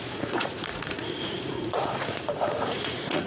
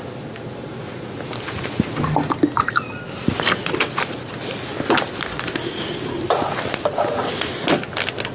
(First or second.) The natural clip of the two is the second